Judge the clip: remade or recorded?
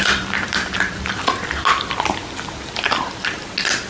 recorded